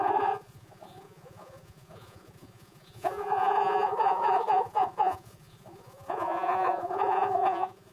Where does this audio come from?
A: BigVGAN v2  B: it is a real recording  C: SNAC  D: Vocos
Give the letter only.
D